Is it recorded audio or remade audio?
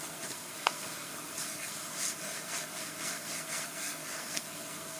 remade